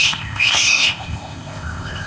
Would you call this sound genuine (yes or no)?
no